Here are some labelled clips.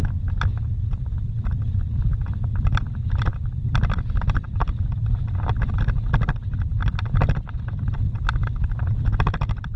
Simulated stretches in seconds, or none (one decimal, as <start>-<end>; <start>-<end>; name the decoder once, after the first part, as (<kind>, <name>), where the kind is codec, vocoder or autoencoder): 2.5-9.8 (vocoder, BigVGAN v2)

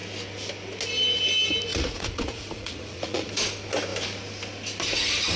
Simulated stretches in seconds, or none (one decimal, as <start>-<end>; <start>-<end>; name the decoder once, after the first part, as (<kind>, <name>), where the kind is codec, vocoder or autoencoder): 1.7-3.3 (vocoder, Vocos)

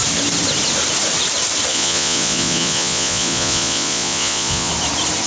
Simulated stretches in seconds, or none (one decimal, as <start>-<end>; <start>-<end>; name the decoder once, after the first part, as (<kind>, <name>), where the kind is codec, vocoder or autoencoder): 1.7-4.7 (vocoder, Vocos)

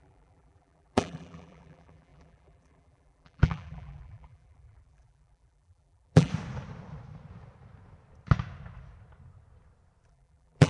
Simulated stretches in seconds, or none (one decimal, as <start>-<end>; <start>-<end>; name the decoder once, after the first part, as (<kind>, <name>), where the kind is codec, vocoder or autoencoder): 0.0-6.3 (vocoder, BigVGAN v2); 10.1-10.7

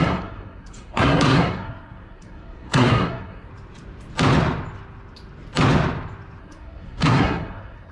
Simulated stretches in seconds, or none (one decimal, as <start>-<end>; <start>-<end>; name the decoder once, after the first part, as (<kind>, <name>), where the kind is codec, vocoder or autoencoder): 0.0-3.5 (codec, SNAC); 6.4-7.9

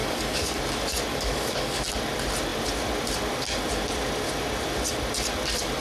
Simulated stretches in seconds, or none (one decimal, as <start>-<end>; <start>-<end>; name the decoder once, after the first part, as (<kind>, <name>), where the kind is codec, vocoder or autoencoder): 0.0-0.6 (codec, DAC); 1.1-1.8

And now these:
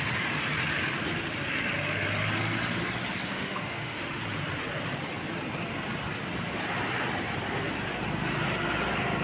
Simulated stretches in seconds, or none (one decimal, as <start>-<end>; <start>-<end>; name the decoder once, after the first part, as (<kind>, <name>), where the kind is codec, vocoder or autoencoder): 3.3-4.2 (autoencoder, DAC-VAE)